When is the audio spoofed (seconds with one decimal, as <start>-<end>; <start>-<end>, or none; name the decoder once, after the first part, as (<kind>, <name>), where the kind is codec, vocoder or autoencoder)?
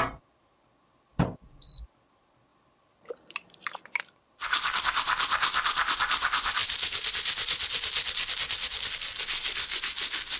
2.5-4.8 (vocoder, BigVGAN v2); 6.6-9.2